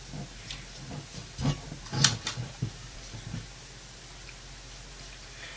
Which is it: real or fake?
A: real